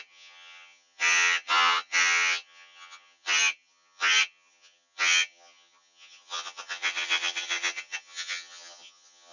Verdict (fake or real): fake